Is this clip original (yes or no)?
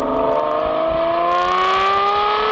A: yes